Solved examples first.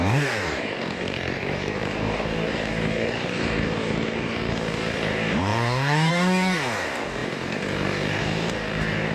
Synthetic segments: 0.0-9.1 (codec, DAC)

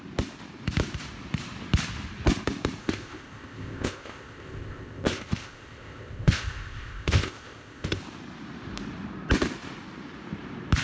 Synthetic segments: 2.8-8.0 (codec, ZipCodec)

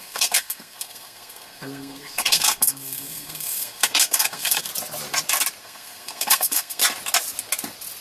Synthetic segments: 0.0-4.7 (codec, SNAC); 5.6-6.8

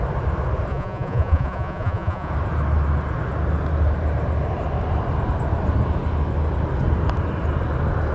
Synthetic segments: 0.7-2.3 (vocoder, Vocos)

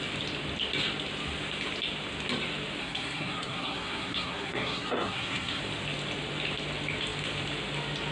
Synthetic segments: 2.8-5.6 (codec, SNAC)